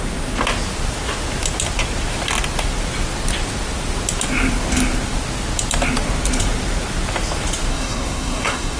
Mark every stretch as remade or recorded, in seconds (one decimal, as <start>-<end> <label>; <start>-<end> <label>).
0.0-7.7 recorded; 7.7-8.8 remade